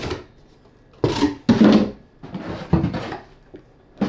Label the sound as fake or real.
real